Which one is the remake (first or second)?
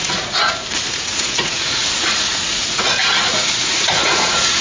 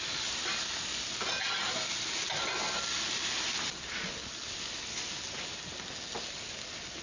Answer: first